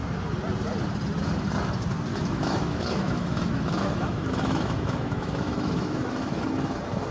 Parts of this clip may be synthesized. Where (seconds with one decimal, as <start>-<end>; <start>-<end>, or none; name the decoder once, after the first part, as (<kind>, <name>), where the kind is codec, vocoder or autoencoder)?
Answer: 2.1-6.4 (autoencoder, DAC-VAE)